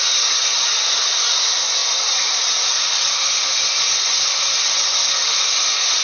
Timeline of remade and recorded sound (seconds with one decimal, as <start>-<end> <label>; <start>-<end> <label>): 0.0-6.0 recorded